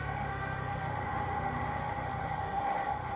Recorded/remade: remade